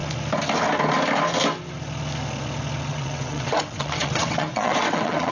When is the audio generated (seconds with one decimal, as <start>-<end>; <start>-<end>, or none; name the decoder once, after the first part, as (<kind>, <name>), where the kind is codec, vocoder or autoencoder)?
2.9-5.3 (vocoder, WaveNeXt)